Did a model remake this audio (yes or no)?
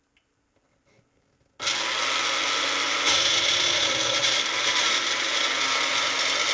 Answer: no